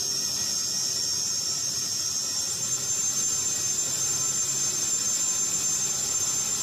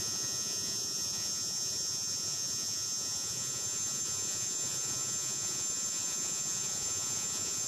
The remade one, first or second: second